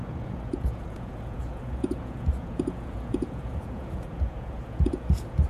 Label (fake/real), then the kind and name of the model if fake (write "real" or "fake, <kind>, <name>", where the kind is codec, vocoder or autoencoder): fake, vocoder, Vocos